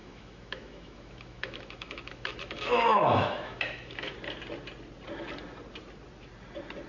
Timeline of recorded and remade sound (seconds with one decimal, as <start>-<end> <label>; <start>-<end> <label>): 0.0-4.1 remade; 4.1-6.9 recorded